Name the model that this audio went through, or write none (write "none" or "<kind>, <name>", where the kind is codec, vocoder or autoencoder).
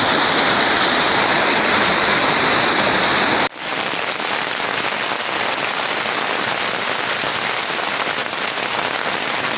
none